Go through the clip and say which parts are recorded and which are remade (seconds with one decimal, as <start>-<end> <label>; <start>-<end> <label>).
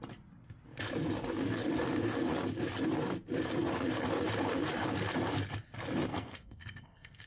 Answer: 0.0-6.1 recorded; 6.1-7.3 remade